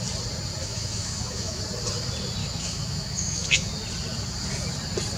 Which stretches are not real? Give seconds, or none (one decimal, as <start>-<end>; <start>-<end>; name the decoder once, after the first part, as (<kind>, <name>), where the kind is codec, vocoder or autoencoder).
0.6-1.6 (autoencoder, DAC-VAE); 2.4-3.7